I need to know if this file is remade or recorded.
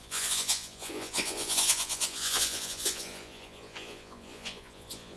remade